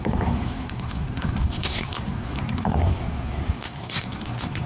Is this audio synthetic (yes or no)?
yes